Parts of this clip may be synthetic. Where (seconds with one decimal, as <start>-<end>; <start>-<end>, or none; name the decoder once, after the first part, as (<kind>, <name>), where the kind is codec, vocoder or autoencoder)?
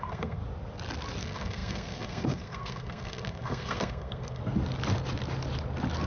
0.0-0.4 (codec, SNAC); 1.2-4.4